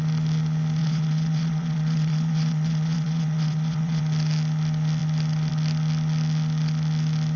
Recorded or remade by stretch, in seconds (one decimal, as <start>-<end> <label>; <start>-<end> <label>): 0.0-0.8 recorded; 0.8-4.0 remade; 4.0-7.4 recorded